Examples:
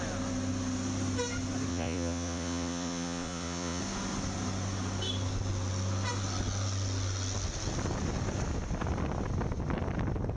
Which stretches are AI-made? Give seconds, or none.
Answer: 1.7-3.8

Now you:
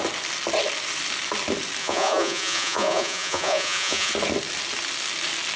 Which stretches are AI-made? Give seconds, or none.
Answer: 1.8-4.1